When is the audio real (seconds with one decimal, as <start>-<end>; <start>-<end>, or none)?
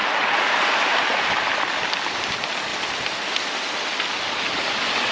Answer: 0.5-5.1